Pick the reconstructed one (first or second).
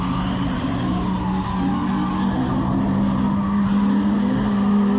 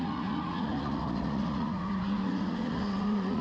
second